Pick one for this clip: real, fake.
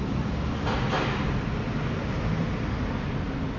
real